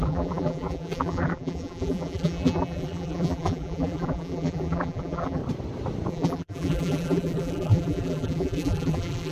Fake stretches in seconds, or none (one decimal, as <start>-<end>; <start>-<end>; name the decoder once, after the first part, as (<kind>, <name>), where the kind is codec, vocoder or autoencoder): 0.0-5.4 (vocoder, BigVGAN v2); 6.1-9.3